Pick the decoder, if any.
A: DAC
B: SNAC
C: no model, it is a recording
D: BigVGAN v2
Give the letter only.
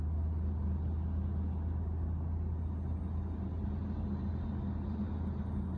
C